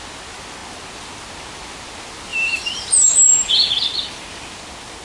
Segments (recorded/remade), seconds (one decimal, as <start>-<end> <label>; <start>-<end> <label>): 0.0-2.3 recorded; 2.3-3.7 remade; 3.7-5.0 recorded